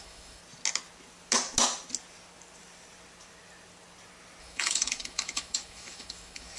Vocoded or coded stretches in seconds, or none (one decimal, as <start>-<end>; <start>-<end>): 0.0-0.4; 4.4-6.6